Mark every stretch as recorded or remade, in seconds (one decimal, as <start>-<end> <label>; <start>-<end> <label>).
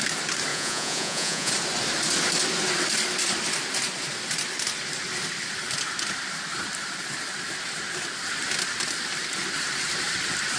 0.0-0.5 recorded; 0.5-1.5 remade; 1.5-10.6 recorded